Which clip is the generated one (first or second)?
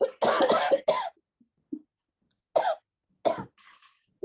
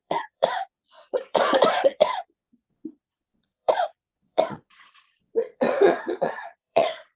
second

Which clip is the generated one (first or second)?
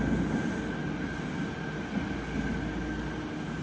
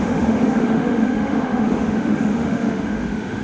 second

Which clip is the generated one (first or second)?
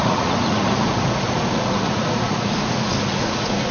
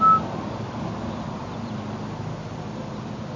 first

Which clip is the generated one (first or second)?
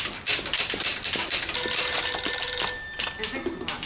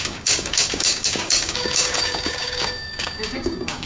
second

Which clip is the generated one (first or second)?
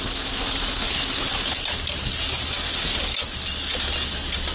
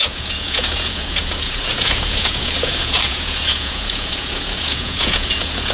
second